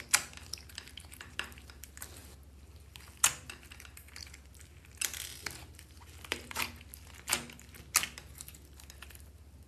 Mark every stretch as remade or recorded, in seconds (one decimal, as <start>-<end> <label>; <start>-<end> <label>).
0.0-9.7 recorded